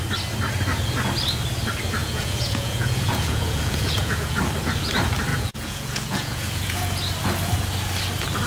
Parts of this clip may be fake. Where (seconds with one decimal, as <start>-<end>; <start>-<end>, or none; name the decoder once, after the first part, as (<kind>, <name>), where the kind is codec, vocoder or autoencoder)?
2.0-4.4 (vocoder, Vocos); 5.3-7.0